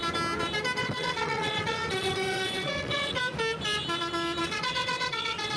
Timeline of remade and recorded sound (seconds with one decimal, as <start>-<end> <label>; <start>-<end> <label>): 0.0-0.8 recorded; 0.8-3.2 remade; 3.2-4.4 recorded; 4.4-5.6 remade